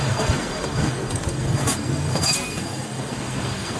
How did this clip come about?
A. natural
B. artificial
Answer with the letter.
B